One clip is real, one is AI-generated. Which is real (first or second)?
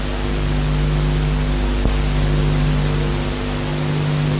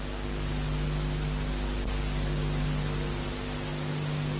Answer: second